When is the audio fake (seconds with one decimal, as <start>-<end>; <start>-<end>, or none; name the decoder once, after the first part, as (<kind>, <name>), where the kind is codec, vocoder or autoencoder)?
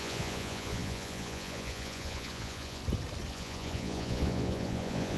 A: 0.0-2.8 (vocoder, Vocos); 3.3-5.2